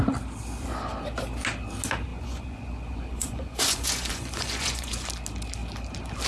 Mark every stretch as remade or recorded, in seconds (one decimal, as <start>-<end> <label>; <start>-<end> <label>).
0.0-2.1 recorded; 2.1-5.1 remade; 5.1-6.3 recorded